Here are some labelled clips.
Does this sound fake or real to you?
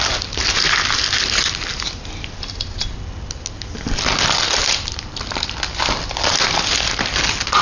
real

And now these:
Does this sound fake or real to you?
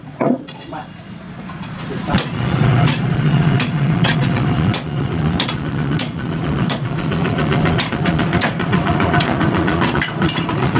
fake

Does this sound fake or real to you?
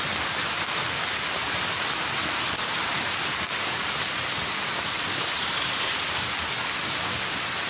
real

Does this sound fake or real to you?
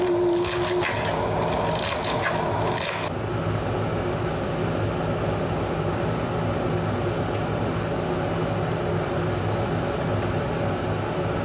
real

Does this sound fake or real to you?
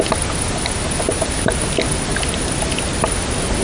real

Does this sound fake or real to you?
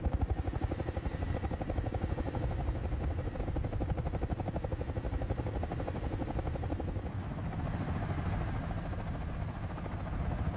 real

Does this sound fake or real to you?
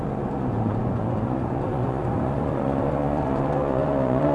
fake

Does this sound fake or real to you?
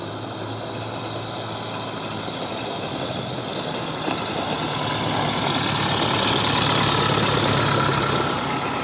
real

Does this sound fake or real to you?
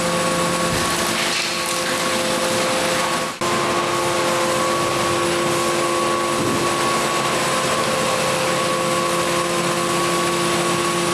real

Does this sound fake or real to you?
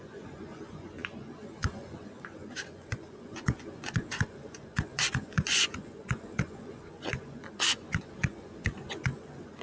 fake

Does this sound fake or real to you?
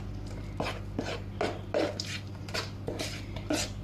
real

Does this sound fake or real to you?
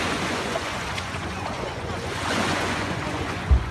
fake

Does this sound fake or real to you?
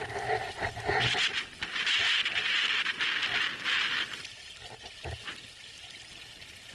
real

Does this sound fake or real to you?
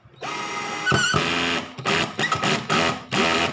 real